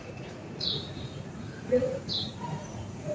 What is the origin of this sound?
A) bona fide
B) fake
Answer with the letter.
B